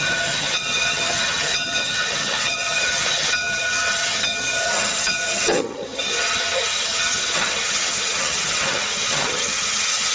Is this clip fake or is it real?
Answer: fake